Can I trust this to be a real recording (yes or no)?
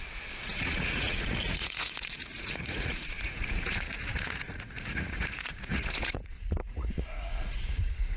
no